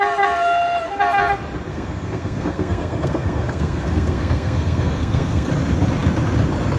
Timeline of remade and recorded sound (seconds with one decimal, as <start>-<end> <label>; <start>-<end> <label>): 0.0-1.7 recorded; 1.7-5.5 remade; 5.5-6.8 recorded